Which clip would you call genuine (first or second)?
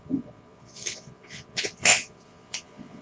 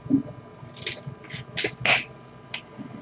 second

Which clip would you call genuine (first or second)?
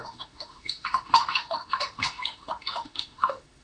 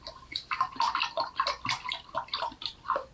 second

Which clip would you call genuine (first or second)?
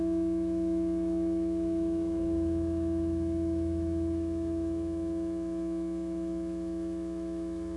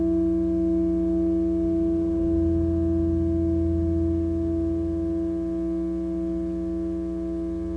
second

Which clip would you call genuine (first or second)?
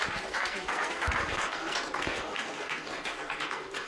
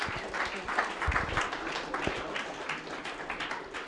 second